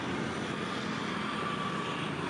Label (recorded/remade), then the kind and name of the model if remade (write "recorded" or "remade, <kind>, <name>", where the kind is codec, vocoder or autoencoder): recorded